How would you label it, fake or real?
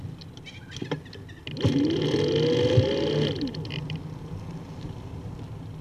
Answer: real